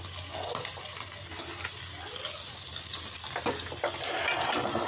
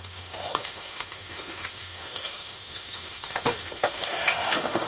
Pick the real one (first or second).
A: first